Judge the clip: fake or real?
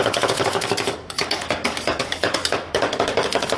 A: fake